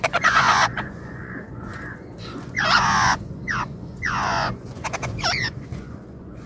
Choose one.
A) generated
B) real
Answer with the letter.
A